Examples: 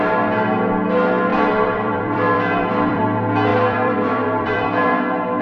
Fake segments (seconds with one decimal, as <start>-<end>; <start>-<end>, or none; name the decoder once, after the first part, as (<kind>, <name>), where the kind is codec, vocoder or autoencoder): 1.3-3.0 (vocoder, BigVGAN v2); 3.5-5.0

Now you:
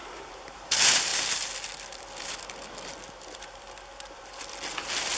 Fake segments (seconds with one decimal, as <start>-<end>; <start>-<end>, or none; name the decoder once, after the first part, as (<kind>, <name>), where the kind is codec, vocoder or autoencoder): 0.0-0.7 (vocoder, BigVGAN v2)

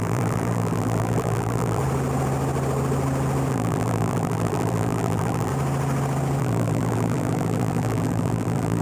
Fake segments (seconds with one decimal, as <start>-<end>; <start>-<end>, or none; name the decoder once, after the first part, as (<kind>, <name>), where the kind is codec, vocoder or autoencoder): 0.0-1.8 (vocoder, BigVGAN v2); 3.5-5.5; 6.4-8.8

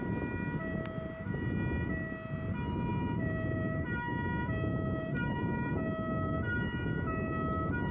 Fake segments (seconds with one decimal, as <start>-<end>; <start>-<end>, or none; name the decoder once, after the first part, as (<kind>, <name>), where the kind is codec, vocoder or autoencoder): 2.9-5.7 (vocoder, BigVGAN v2)

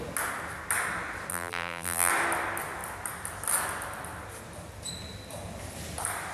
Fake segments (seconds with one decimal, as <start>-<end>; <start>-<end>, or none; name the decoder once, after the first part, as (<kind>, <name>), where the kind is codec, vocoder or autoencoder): 1.3-2.1 (vocoder, BigVGAN v2)

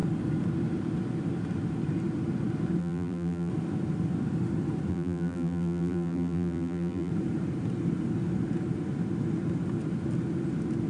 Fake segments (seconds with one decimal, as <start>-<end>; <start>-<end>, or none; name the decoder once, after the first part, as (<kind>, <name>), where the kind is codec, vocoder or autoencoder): 2.8-3.5 (vocoder, BigVGAN v2); 4.9-7.1

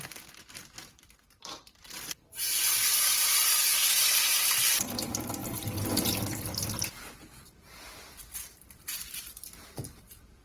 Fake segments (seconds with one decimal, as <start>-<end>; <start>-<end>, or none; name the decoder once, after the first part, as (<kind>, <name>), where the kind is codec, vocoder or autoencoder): 0.0-3.6 (vocoder, BigVGAN v2); 4.6-5.4; 7.6-10.4